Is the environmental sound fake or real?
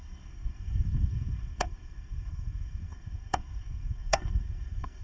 fake